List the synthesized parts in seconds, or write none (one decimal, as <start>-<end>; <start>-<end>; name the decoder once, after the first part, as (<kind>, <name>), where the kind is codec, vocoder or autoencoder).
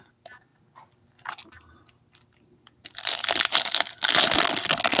none